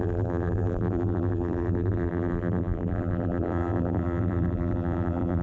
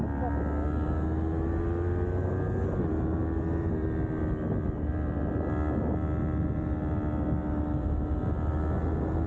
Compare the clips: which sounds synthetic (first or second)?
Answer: first